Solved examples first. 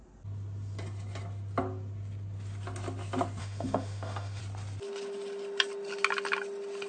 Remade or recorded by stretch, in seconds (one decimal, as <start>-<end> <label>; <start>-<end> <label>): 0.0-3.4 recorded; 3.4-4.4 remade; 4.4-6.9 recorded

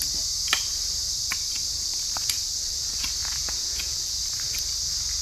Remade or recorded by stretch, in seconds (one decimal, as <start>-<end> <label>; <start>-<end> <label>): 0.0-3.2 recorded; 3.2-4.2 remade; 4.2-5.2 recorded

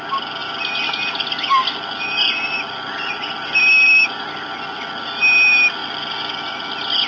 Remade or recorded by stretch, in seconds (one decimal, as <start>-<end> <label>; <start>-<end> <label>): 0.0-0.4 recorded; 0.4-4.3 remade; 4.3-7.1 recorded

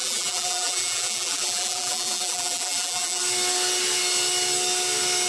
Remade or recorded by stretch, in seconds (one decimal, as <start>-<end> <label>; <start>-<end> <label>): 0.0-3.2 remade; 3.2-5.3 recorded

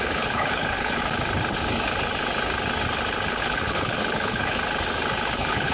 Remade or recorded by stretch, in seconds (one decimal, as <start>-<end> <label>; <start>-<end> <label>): 0.0-1.0 remade; 1.0-3.4 recorded; 3.4-4.6 remade; 4.6-5.3 recorded; 5.3-5.7 remade

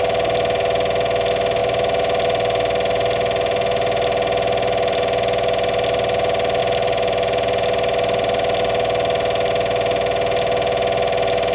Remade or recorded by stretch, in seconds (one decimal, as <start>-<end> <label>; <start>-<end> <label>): 0.0-11.5 recorded

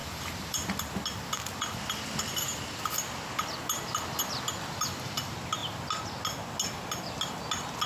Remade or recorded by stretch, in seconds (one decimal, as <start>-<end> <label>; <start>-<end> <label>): 0.0-0.7 remade; 0.7-7.9 recorded

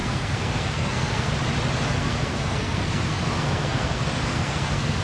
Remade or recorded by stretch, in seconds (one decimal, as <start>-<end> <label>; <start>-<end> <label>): 0.0-1.3 remade; 1.3-1.9 recorded; 1.9-5.0 remade